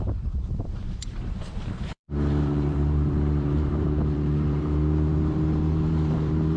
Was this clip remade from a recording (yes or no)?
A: yes